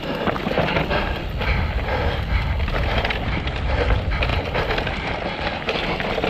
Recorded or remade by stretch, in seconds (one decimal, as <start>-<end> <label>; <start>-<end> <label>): 0.0-6.3 recorded